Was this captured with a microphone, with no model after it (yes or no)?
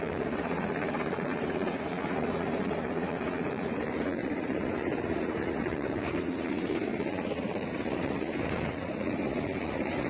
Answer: no